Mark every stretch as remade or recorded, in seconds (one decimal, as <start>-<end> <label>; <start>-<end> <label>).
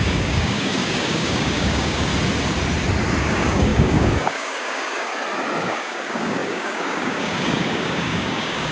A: 0.0-2.1 remade; 2.1-3.2 recorded; 3.2-5.1 remade; 5.1-5.6 recorded; 5.6-8.7 remade